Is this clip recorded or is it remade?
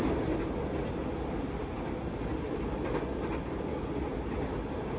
recorded